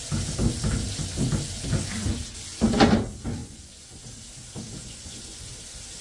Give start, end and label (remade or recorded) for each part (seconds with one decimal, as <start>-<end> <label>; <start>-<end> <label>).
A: 0.0-3.4 recorded; 3.4-4.0 remade; 4.0-4.8 recorded; 4.8-5.5 remade; 5.5-6.0 recorded